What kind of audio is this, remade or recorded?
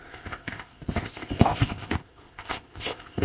remade